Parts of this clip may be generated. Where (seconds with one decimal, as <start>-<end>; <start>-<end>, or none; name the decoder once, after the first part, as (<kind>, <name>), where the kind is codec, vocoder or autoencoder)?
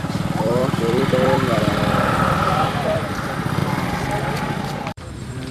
0.0-3.6 (vocoder, BigVGAN v2); 4.2-5.5